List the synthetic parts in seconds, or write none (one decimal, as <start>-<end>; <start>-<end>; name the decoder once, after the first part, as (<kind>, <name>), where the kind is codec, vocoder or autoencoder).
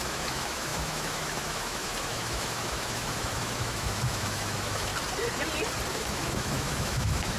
0.0-4.9 (autoencoder, DAC-VAE); 5.9-7.4